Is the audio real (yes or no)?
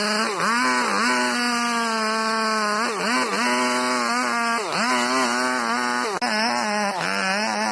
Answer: yes